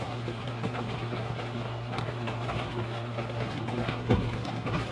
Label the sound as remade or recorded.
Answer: remade